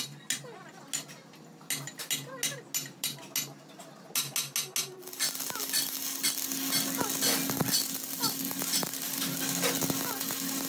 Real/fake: real